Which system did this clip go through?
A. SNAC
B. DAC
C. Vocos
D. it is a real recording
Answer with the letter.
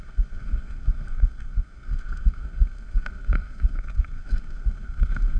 A